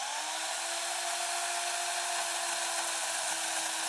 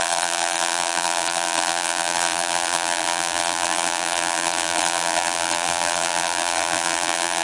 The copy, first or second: second